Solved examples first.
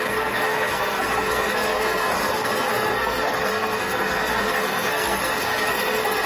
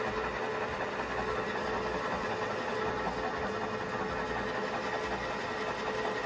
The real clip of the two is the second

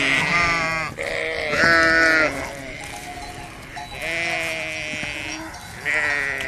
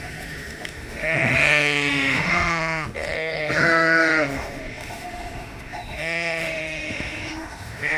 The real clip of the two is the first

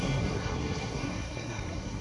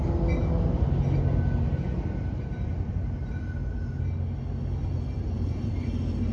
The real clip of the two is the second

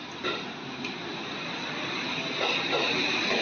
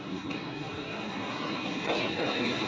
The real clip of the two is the first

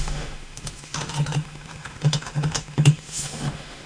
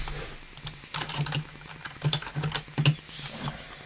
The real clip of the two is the second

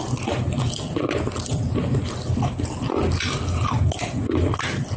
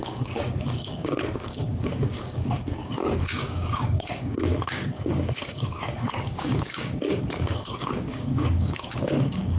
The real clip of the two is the first